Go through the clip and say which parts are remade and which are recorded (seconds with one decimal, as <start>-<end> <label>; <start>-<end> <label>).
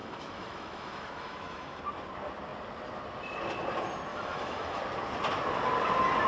0.0-1.8 remade; 1.8-4.1 recorded; 4.1-4.8 remade; 4.8-6.3 recorded